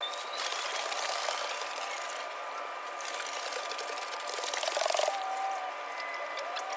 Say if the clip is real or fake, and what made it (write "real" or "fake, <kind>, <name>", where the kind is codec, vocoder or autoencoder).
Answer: real